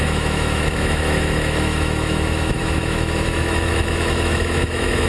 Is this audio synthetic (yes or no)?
yes